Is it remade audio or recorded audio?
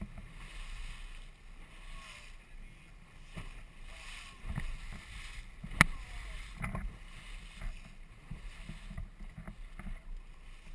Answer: recorded